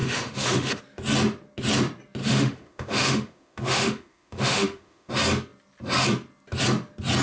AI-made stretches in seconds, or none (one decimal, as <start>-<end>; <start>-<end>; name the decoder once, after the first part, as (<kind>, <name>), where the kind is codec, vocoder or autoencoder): 0.0-0.8 (autoencoder, DAC-VAE); 2.2-5.1